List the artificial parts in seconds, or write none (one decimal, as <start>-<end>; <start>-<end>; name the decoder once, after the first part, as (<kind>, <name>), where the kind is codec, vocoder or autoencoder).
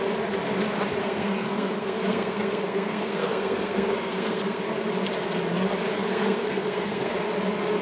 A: 1.0-4.6 (codec, SNAC); 5.9-7.2